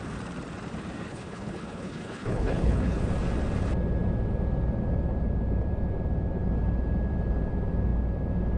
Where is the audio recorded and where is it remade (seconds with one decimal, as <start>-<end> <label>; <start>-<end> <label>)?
0.0-1.1 recorded; 1.1-3.0 remade; 3.0-8.6 recorded